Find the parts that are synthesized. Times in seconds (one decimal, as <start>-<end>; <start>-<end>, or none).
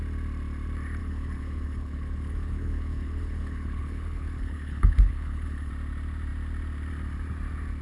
1.0-5.7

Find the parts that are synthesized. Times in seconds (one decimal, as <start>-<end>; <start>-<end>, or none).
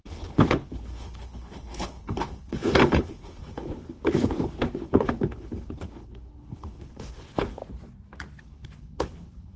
0.0-7.6; 8.4-9.6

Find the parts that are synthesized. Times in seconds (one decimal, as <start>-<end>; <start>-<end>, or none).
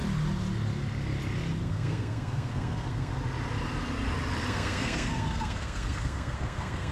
1.6-3.1; 4.5-6.9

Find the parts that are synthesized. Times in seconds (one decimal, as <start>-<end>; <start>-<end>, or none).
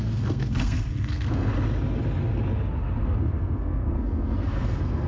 0.0-1.5; 3.0-5.1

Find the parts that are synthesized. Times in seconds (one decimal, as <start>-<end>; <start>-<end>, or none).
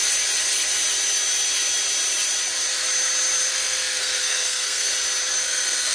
3.5-4.9; 5.4-5.9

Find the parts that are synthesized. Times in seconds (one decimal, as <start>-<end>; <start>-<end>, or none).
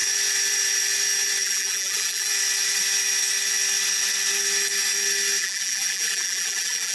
1.4-2.3; 5.4-6.9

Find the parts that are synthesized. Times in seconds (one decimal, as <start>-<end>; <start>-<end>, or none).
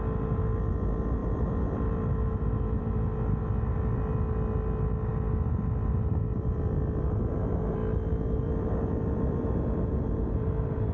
1.2-2.9; 7.8-10.9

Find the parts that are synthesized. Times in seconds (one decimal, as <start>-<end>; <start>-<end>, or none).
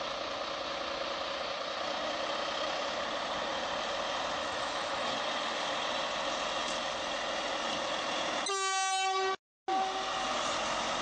4.4-5.1